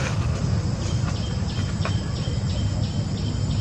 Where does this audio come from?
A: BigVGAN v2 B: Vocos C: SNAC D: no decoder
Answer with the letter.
D